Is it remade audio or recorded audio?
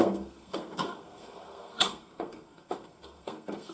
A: remade